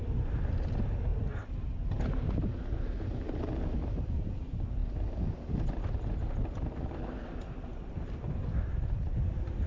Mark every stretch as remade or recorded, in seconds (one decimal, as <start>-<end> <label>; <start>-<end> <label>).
0.0-9.7 recorded